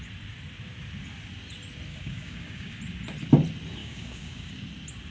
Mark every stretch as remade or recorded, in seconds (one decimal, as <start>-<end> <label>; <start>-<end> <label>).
0.0-1.9 recorded; 1.9-2.8 remade; 2.8-3.8 recorded; 3.8-4.5 remade; 4.5-5.1 recorded